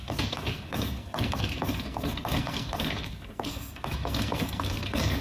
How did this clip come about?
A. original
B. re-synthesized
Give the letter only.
B